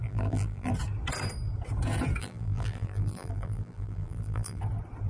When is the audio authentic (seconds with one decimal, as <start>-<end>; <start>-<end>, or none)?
0.7-2.2; 4.6-5.1